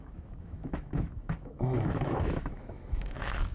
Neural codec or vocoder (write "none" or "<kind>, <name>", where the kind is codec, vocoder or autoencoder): autoencoder, DAC-VAE